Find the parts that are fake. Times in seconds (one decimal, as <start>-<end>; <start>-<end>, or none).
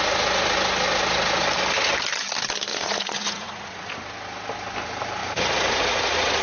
2.7-4.0; 5.2-6.4